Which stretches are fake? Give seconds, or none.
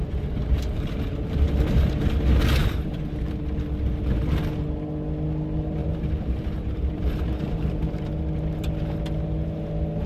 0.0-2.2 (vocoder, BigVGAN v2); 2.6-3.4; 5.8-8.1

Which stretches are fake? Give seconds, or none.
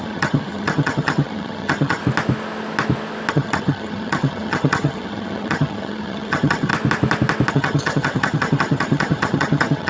0.0-2.0 (vocoder, HiFi-GAN); 3.3-6.7; 7.5-9.9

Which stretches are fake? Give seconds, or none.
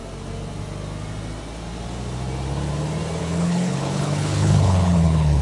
3.2-5.4 (codec, HILCodec)